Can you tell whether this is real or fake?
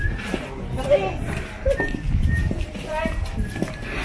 real